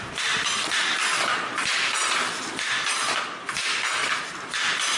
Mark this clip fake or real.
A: real